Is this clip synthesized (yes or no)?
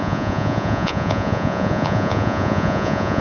yes